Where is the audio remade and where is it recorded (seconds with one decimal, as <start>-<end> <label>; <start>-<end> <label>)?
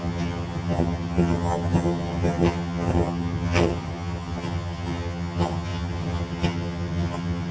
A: 0.0-7.5 remade